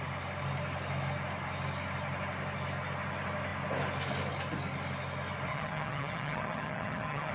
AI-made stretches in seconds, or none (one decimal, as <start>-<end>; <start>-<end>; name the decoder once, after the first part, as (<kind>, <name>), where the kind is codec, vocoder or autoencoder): 5.5-7.3 (vocoder, HiFi-GAN)